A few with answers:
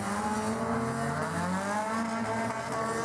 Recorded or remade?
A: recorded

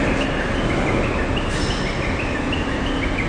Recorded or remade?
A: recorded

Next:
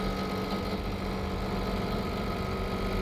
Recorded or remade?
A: recorded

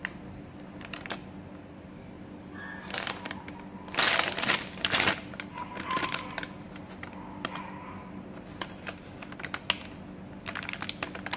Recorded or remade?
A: recorded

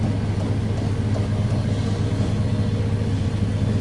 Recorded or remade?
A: recorded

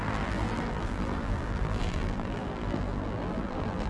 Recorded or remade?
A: remade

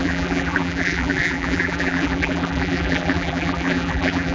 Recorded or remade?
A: remade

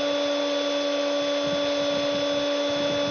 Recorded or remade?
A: recorded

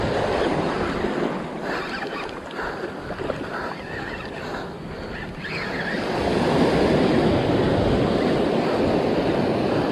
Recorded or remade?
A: recorded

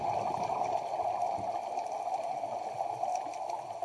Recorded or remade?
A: recorded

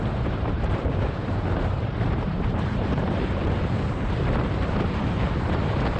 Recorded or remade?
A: remade